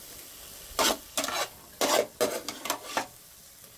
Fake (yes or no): no